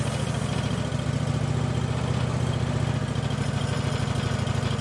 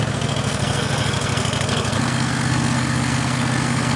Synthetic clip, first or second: second